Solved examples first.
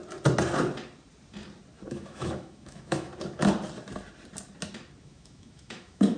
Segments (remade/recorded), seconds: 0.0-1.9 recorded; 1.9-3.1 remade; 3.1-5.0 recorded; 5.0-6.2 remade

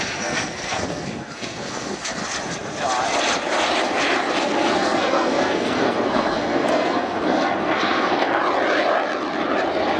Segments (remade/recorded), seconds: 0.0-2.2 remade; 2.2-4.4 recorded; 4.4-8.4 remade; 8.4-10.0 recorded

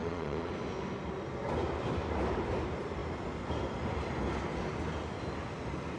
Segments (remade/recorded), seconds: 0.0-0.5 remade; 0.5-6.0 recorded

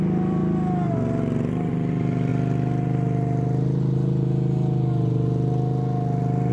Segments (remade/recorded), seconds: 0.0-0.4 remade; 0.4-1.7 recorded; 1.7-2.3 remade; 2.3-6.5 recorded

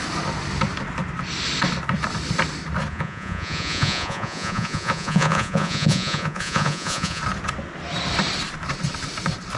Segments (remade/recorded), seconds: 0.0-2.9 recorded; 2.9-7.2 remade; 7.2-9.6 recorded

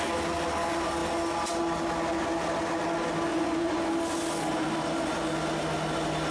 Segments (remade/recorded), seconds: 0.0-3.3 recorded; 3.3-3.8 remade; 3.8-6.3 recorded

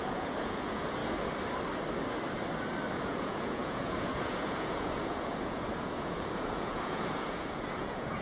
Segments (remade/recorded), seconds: 0.0-1.0 remade; 1.0-3.0 recorded; 3.0-8.2 remade